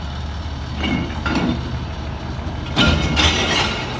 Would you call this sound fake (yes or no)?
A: no